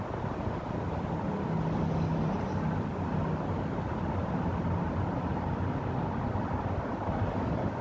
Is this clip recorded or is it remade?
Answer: recorded